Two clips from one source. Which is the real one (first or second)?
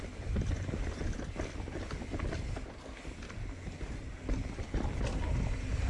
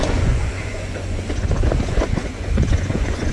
first